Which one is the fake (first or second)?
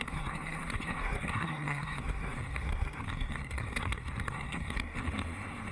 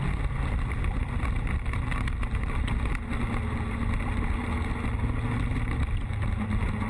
first